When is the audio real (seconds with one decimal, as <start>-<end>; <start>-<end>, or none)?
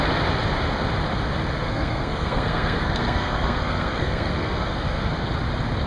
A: 0.0-1.6; 5.1-5.9